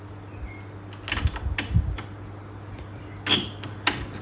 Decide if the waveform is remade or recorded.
recorded